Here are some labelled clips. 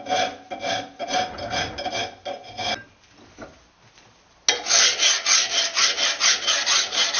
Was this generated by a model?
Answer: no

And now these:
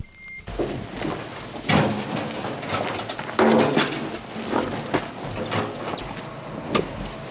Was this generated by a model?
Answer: no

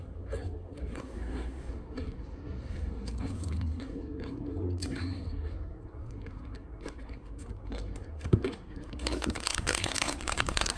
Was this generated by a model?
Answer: yes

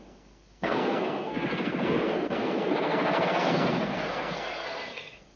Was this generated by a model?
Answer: yes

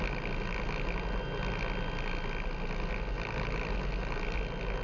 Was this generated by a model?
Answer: no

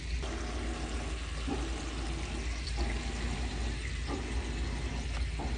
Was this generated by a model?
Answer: no